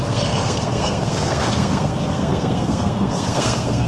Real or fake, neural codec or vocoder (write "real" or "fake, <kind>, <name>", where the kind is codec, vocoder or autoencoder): fake, codec, SNAC